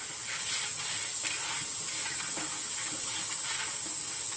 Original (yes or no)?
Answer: yes